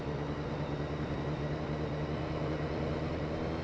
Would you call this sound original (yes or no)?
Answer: yes